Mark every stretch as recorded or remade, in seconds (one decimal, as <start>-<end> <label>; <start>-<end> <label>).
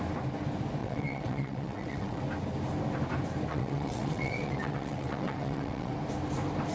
0.0-0.8 recorded; 0.8-2.2 remade; 2.2-3.5 recorded; 3.5-5.9 remade; 5.9-6.7 recorded